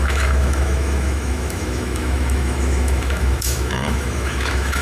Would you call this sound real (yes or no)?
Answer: no